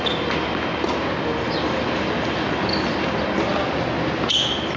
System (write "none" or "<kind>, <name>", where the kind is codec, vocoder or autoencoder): none